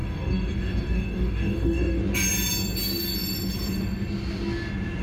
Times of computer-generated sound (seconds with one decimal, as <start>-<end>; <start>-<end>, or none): 0.0-2.0